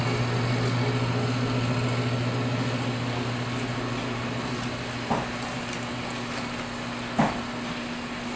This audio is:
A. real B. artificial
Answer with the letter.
A